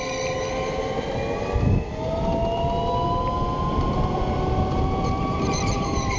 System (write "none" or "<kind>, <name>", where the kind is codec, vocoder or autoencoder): none